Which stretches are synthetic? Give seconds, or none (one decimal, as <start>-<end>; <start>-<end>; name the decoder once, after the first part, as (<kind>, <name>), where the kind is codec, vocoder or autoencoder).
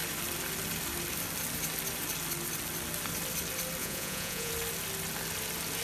3.8-4.5 (vocoder, Vocos)